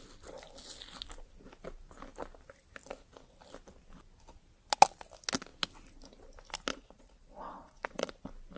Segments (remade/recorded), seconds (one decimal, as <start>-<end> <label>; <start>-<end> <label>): 0.0-6.7 recorded; 6.7-8.1 remade; 8.1-8.6 recorded